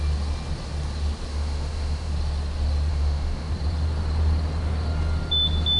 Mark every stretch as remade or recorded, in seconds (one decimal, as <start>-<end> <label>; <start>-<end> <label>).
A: 0.0-1.3 recorded; 1.3-2.1 remade; 2.1-2.9 recorded; 2.9-3.5 remade; 3.5-5.8 recorded